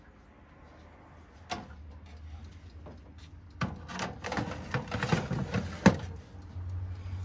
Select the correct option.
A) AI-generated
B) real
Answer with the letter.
B